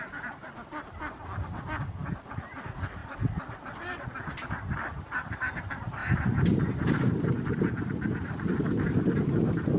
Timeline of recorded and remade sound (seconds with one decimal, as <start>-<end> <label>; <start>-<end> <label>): 0.0-9.8 remade